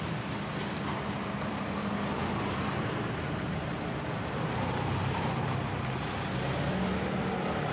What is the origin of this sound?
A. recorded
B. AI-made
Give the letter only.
A